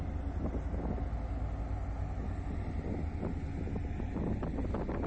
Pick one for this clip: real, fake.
real